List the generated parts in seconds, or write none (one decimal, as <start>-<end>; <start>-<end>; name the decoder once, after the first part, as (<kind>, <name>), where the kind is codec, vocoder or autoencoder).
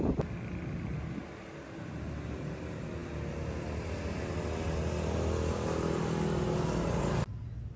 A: none